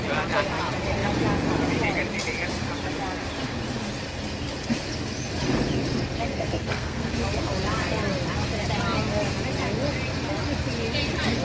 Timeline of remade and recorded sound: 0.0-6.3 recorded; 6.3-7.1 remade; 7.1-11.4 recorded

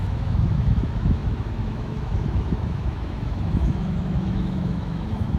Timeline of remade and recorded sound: 0.0-5.4 remade

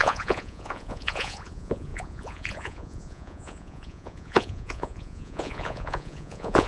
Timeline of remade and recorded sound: 0.0-6.7 remade

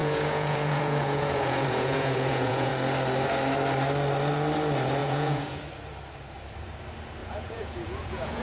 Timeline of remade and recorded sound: 0.0-2.7 remade; 2.7-5.0 recorded; 5.0-5.6 remade; 5.6-7.2 recorded; 7.2-8.4 remade

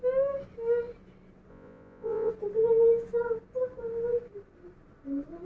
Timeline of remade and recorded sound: 0.0-1.5 recorded; 1.5-2.3 remade; 2.3-5.4 recorded

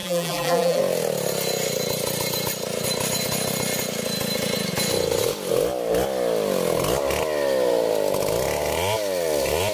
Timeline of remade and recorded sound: 0.0-0.8 remade; 0.8-9.7 recorded